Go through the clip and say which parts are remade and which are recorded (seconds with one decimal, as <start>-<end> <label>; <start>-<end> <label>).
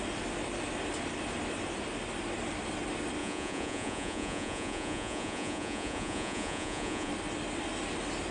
0.0-3.2 recorded; 3.2-7.1 remade; 7.1-8.3 recorded